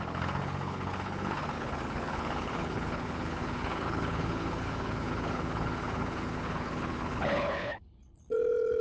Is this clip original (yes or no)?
no